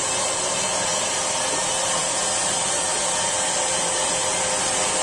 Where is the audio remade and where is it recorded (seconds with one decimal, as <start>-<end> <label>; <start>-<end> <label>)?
0.0-5.0 recorded